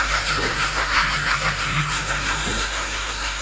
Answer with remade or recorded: remade